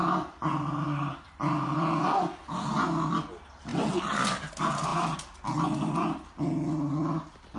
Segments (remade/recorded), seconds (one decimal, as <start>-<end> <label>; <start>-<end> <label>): 0.0-7.6 recorded